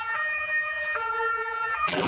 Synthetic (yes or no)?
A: yes